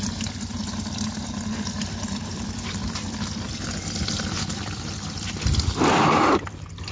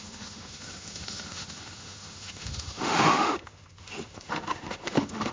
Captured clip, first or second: first